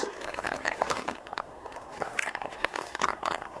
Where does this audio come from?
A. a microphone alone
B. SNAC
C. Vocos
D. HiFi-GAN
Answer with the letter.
B